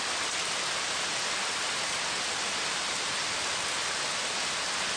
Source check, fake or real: real